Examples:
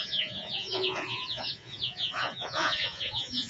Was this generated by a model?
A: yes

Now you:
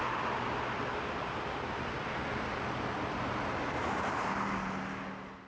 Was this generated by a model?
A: no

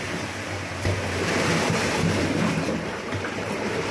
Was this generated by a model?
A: yes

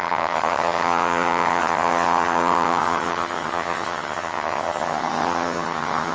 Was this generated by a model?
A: yes